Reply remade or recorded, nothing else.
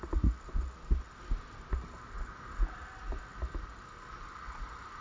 recorded